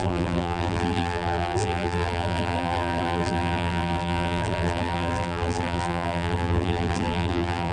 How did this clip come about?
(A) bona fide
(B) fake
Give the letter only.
B